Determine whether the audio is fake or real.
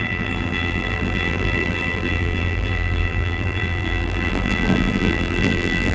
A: fake